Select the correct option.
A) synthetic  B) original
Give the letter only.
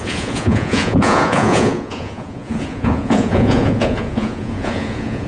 A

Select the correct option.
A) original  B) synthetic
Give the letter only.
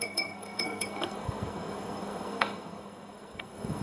B